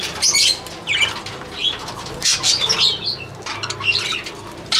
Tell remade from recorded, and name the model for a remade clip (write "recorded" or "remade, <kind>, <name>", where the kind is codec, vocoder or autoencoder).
recorded